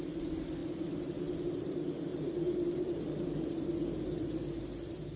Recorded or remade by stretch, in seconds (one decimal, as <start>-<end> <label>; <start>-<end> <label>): 0.0-2.1 recorded; 2.1-3.5 remade; 3.5-5.2 recorded